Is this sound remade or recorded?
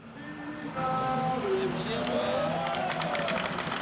recorded